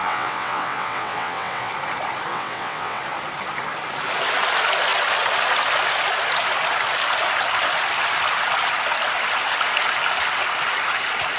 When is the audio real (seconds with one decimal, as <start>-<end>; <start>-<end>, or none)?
1.7-2.3; 3.0-11.4

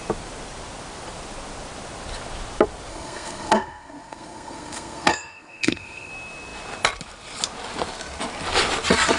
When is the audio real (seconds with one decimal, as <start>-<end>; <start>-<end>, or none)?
0.0-2.9; 6.1-9.2

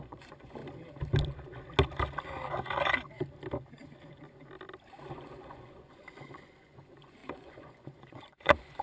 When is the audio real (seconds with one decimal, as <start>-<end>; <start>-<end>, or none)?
0.6-5.1

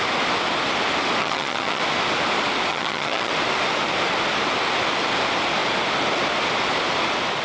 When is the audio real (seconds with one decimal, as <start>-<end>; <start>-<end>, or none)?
0.0-1.2; 1.8-2.7; 3.3-7.4

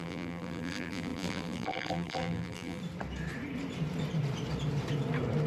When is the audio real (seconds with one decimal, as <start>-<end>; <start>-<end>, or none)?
2.8-5.5